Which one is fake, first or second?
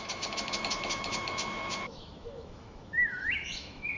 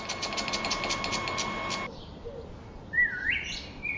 first